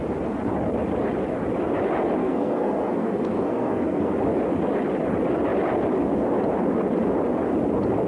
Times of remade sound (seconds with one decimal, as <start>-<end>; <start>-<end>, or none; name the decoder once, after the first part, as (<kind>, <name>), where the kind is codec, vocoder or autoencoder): 2.2-4.1 (codec, SNAC)